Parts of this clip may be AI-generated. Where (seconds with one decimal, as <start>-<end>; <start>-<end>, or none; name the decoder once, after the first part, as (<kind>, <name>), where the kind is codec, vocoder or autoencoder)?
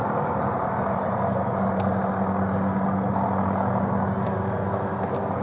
none